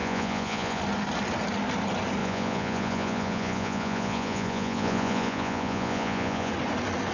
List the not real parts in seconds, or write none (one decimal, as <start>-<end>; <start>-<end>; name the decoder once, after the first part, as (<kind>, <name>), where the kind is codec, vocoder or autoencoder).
0.0-0.8 (vocoder, Vocos); 2.2-6.5